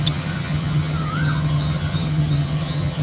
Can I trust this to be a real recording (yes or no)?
no